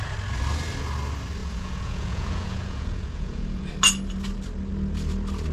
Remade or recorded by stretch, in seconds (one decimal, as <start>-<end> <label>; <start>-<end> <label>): 0.0-1.4 recorded; 1.4-3.7 remade; 3.7-5.5 recorded